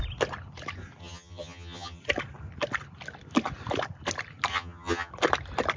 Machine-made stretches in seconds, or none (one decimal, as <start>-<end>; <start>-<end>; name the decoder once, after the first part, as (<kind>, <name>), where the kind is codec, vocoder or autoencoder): 1.0-2.0 (vocoder, HiFi-GAN); 4.5-5.1